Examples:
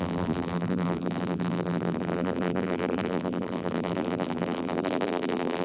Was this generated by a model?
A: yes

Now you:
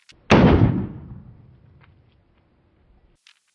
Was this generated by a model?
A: no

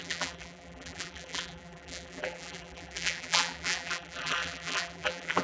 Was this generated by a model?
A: yes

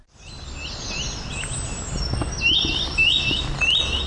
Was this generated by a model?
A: no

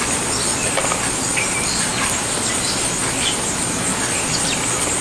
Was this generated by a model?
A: no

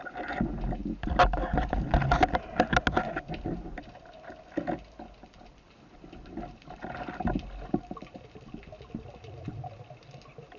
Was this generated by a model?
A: no